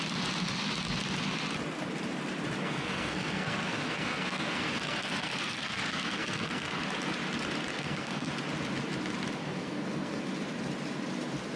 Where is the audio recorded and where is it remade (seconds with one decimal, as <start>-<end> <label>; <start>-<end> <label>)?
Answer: 0.0-2.6 recorded; 2.6-6.8 remade; 6.8-7.7 recorded; 7.7-8.3 remade; 8.3-9.4 recorded; 9.4-10.2 remade; 10.2-11.6 recorded